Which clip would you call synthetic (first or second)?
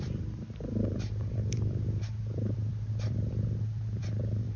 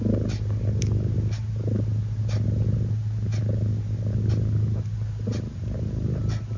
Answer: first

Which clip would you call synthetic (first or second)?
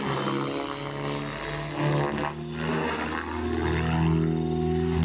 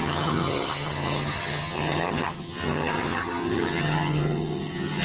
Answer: second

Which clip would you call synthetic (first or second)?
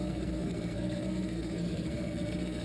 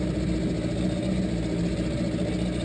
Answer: first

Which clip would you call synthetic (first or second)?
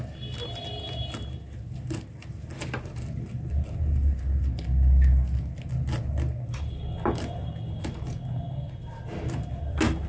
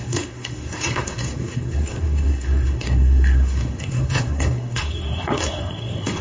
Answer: second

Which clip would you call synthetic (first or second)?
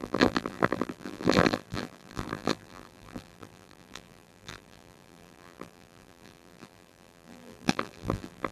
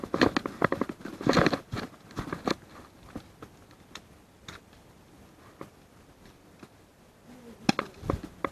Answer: first